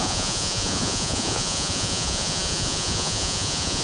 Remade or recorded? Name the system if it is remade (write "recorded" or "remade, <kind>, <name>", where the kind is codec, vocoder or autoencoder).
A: remade, vocoder, Vocos